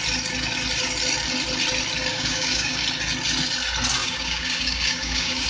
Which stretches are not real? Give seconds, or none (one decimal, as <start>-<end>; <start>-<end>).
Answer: 2.1-2.8; 4.0-5.5